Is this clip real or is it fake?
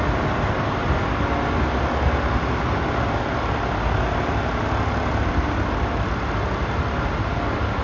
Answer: real